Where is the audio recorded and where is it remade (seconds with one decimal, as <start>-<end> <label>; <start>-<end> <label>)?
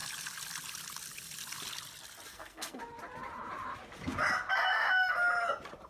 0.0-2.3 recorded; 2.3-2.8 remade; 2.8-5.9 recorded